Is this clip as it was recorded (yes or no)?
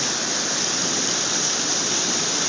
yes